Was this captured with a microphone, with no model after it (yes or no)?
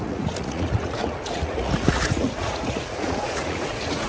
no